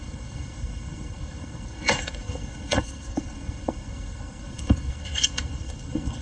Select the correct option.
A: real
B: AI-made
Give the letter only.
B